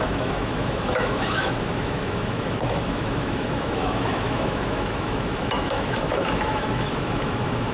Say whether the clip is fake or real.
fake